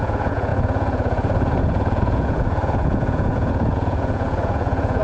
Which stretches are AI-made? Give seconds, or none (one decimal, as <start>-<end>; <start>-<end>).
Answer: 0.0-5.0